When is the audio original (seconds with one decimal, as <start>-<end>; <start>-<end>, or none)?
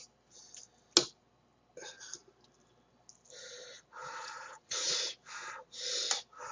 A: 0.0-4.0; 4.9-6.5